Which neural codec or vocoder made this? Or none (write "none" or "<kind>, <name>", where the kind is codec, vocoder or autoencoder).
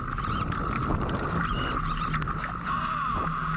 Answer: none